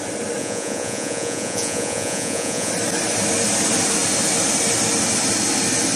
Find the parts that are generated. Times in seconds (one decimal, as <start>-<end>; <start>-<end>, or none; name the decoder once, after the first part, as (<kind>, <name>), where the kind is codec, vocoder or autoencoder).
0.4-2.7 (vocoder, Vocos)